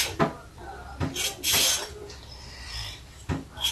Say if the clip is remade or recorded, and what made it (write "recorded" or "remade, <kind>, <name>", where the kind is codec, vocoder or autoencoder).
recorded